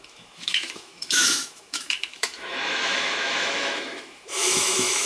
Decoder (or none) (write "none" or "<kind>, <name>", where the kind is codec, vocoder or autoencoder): autoencoder, DAC-VAE